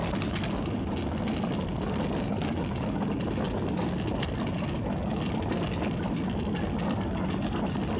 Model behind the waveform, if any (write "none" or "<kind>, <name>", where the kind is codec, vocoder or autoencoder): none